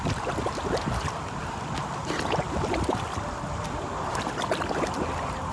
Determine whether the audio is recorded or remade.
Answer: recorded